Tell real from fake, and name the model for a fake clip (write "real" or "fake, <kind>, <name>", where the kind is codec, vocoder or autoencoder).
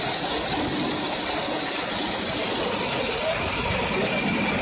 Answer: real